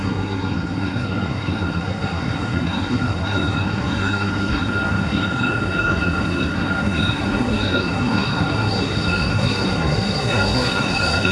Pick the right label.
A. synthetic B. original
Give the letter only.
A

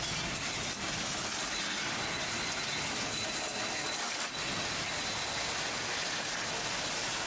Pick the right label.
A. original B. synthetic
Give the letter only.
A